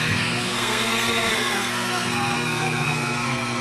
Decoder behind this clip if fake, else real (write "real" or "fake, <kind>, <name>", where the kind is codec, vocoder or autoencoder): fake, codec, SNAC